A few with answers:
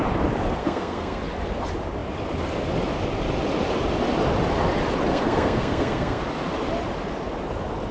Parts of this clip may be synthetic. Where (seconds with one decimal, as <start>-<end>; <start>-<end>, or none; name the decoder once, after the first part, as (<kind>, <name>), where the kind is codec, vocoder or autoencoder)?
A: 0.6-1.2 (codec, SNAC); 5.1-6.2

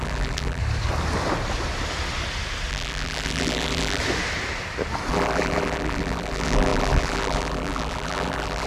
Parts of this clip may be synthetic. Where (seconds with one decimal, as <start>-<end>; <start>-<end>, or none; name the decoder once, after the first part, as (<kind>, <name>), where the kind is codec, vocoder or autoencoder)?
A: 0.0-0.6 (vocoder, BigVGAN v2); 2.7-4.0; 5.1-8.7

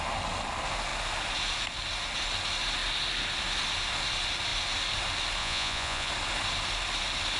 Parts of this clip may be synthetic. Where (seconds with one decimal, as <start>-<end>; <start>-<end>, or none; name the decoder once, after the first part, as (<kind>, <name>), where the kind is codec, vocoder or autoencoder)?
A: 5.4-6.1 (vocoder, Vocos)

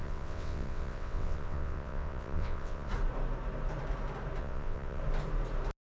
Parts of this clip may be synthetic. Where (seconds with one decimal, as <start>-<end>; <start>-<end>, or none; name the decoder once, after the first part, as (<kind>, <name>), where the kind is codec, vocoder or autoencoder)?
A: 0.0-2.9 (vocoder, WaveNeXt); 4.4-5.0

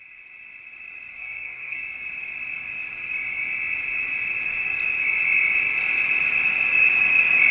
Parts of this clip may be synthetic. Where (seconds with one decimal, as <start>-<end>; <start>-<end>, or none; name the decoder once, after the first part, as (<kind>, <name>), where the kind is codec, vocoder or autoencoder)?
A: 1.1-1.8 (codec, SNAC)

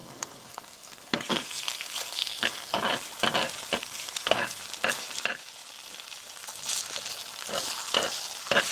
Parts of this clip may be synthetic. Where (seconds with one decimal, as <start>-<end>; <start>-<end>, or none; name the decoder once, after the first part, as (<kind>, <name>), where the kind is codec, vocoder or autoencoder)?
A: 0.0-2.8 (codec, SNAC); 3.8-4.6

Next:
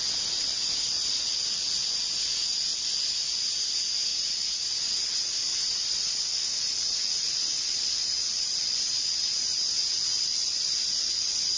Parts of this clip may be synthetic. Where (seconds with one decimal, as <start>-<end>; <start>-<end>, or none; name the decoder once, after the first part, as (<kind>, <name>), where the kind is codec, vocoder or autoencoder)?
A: 4.1-4.9 (vocoder, Vocos); 5.5-8.4; 10.1-11.6

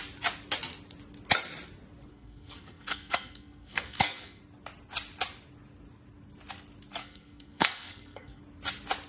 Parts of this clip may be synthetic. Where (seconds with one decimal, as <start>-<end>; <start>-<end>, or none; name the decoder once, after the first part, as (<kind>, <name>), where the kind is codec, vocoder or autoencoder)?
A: 2.1-4.4 (codec, SNAC); 7.0-8.4